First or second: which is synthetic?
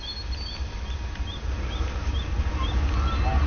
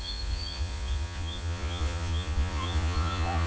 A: second